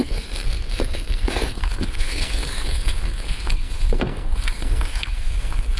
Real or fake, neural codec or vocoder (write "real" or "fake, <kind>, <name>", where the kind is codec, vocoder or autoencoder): fake, codec, SNAC